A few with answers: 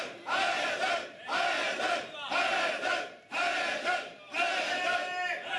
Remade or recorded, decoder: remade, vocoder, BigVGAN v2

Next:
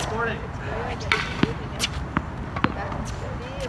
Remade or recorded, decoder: recorded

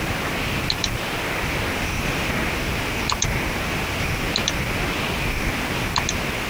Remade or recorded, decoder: recorded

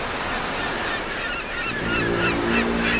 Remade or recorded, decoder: recorded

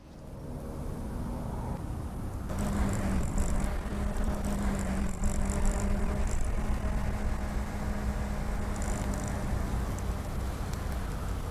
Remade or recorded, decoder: recorded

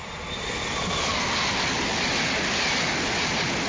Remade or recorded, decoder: recorded